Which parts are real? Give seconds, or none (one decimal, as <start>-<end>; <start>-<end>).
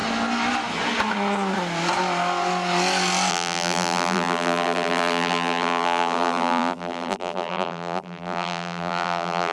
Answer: 0.0-3.3